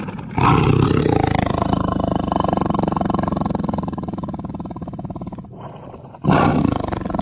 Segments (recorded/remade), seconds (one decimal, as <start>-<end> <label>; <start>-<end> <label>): 0.0-7.2 recorded